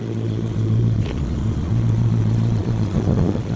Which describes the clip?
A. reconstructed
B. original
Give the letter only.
A